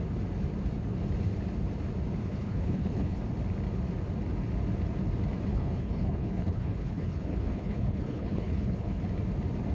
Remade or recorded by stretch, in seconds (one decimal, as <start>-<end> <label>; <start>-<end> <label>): 0.0-2.2 recorded; 2.2-3.2 remade; 3.2-5.5 recorded; 5.5-9.0 remade; 9.0-9.7 recorded

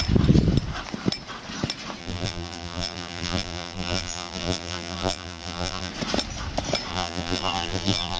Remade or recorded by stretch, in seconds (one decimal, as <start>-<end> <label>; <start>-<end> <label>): 0.0-2.0 recorded; 2.0-5.9 remade; 5.9-6.9 recorded; 6.9-8.2 remade